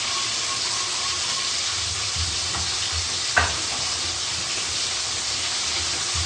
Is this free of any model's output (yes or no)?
yes